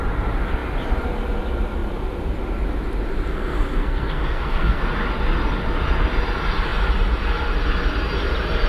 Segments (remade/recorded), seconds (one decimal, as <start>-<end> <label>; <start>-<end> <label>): 0.0-3.3 recorded; 3.3-4.8 remade; 4.8-8.7 recorded